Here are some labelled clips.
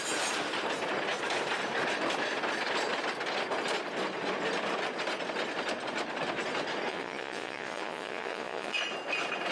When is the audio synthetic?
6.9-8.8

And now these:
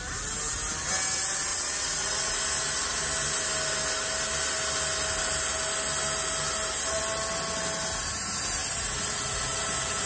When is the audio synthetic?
1.5-2.3

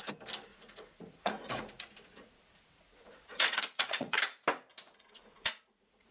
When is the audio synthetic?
0.5-4.2; 4.7-6.1

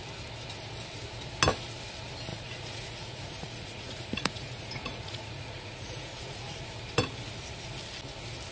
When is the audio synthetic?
2.3-6.6

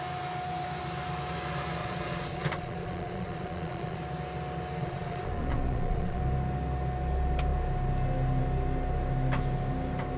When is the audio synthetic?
1.8-4.0; 4.8-6.2